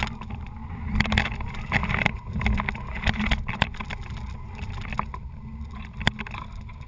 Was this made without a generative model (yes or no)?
yes